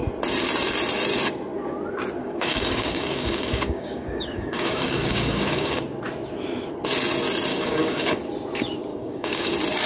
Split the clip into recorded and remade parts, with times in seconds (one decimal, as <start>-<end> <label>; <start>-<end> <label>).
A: 0.0-2.2 recorded; 2.2-5.8 remade; 5.8-7.5 recorded; 7.5-8.2 remade; 8.2-8.9 recorded; 8.9-9.5 remade; 9.5-9.9 recorded